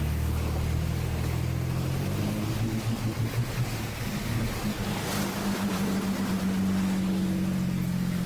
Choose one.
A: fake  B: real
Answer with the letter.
B